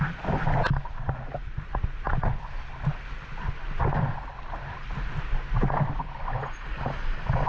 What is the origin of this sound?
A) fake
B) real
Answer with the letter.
B